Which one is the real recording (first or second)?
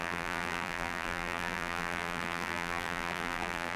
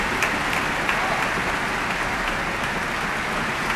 second